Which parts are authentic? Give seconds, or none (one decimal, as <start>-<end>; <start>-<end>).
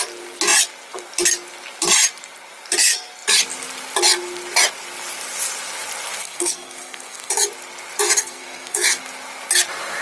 0.0-6.2; 7.3-8.2; 9.0-10.0